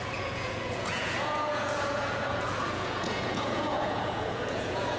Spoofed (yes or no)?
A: yes